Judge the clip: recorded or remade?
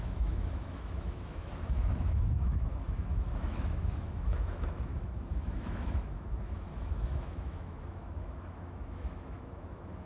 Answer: remade